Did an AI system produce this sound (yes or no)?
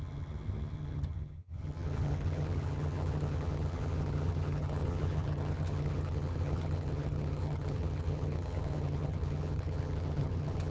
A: yes